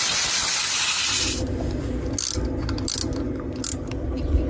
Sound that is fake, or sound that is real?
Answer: real